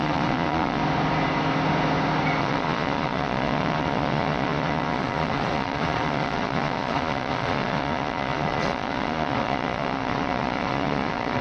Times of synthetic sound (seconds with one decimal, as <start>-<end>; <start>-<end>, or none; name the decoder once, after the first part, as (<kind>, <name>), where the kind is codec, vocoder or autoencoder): 0.0-0.8 (vocoder, Vocos); 2.4-11.4